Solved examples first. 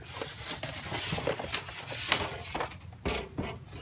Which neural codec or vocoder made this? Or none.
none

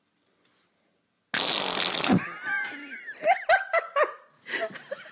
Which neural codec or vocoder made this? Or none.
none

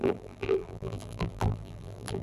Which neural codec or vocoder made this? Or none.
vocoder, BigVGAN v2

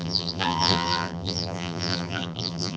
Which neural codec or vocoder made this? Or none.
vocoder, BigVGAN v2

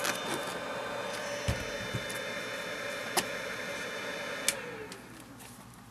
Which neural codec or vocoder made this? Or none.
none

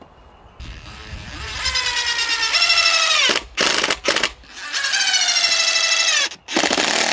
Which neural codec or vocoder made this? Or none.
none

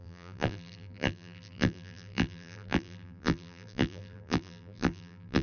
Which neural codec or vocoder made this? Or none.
vocoder, BigVGAN v2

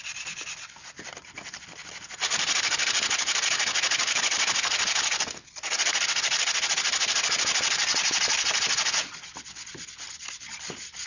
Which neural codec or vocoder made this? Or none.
none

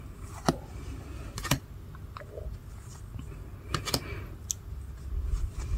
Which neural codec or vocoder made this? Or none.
none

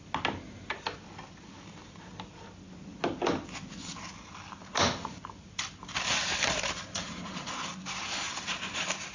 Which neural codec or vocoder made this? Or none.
none